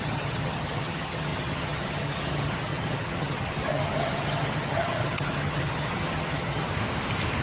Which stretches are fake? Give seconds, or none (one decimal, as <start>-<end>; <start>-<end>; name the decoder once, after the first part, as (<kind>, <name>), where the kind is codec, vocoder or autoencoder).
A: 0.0-6.7 (vocoder, HiFi-GAN)